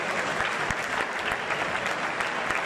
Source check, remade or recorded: recorded